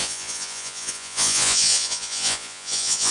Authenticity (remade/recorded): remade